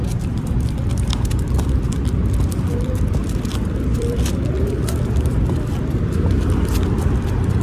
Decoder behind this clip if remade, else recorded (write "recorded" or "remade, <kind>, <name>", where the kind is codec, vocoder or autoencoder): remade, vocoder, BigVGAN v2